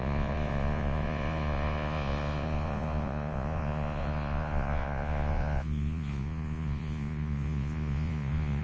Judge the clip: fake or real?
fake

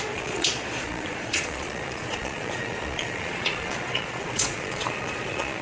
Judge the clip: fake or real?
fake